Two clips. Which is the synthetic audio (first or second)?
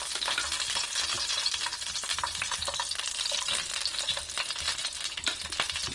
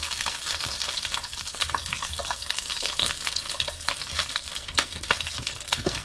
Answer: second